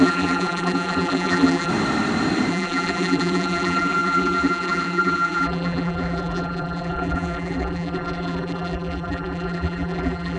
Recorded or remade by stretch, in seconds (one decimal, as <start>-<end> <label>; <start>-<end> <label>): 0.0-1.7 remade; 1.7-2.5 recorded; 2.5-10.4 remade

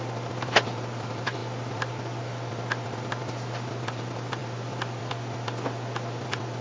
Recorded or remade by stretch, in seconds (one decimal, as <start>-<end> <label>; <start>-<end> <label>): 0.0-4.4 recorded; 4.4-5.0 remade; 5.0-6.6 recorded